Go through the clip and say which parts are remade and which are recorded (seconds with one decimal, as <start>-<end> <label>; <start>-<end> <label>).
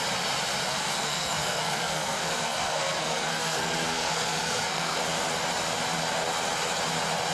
0.0-0.7 recorded; 0.7-5.0 remade; 5.0-7.3 recorded